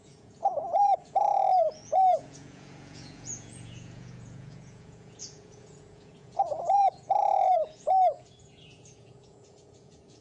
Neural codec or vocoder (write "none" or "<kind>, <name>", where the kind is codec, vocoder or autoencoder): vocoder, Vocos